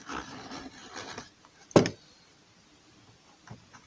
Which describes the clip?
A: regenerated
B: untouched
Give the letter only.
B